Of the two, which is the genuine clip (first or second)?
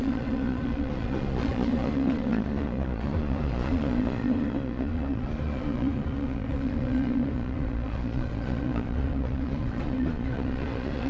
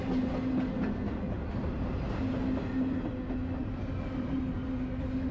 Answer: second